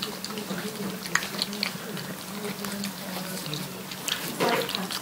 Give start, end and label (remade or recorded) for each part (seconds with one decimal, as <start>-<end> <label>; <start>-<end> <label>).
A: 0.0-5.0 recorded